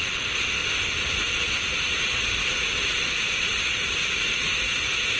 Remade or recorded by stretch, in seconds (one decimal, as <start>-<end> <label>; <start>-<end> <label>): 0.0-5.2 recorded